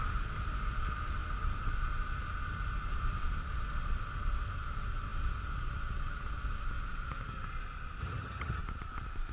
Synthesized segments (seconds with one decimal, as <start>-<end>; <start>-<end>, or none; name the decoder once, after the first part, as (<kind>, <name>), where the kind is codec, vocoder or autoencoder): 8.0-8.6 (vocoder, HiFi-GAN)